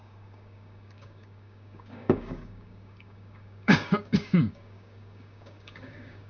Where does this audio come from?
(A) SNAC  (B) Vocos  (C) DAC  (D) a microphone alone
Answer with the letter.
C